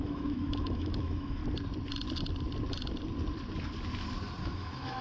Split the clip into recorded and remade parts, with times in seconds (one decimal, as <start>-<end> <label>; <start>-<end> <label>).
0.0-1.4 remade; 1.4-4.4 recorded; 4.4-5.0 remade